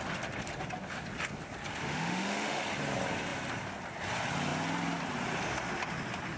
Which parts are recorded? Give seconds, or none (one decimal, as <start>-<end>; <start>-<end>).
0.0-1.8; 2.6-6.4